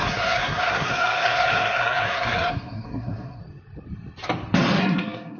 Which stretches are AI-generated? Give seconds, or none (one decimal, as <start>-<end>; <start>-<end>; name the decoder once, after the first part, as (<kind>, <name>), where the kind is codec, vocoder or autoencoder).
0.0-3.4 (codec, SNAC); 4.8-5.4

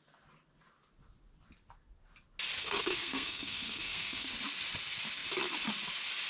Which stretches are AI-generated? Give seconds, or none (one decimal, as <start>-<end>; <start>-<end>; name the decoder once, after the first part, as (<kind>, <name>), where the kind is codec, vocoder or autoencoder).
2.6-4.3 (codec, SNAC)

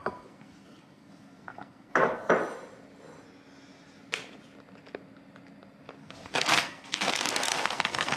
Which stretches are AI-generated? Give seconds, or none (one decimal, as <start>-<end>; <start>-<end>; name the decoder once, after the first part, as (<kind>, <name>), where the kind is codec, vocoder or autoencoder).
0.0-2.3 (codec, SNAC); 6.0-8.2

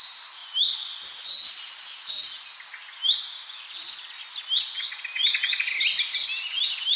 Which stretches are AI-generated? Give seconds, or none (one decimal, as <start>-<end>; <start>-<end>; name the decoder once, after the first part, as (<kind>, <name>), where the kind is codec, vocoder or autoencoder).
none